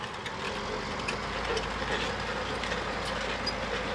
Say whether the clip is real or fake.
real